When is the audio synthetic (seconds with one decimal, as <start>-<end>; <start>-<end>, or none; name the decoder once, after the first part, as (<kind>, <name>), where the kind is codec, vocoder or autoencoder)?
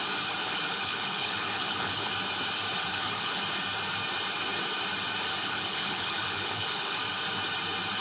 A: 0.4-2.1 (codec, HILCodec); 2.9-3.4; 5.4-7.0